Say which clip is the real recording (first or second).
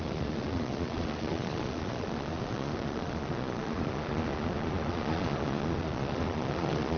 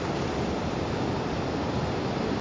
second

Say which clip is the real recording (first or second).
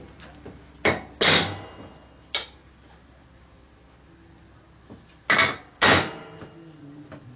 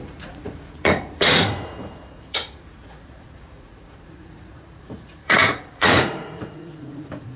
first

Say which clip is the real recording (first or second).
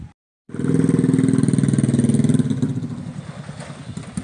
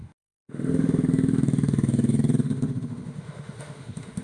first